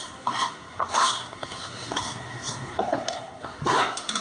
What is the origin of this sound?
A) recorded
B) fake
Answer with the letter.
B